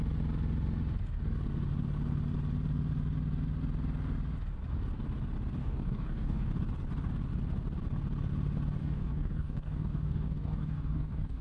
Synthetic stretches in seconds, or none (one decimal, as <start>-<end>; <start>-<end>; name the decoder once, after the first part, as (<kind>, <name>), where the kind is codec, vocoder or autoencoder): 5.6-6.5 (codec, DAC); 8.8-11.4